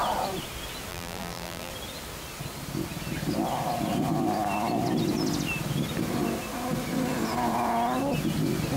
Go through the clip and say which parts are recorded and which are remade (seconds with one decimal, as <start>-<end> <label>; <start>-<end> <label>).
0.0-0.9 recorded; 0.9-1.7 remade; 1.7-8.8 recorded